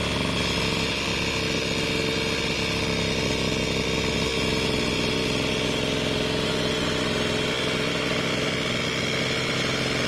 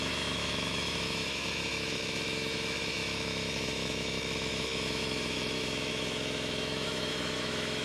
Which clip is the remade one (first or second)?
second